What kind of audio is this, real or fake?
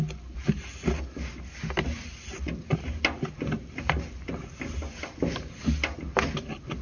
real